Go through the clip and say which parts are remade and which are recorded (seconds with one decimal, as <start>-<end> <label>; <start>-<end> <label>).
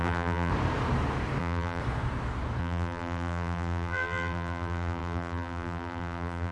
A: 0.0-0.5 remade; 0.5-1.4 recorded; 1.4-1.8 remade; 1.8-2.6 recorded; 2.6-6.5 remade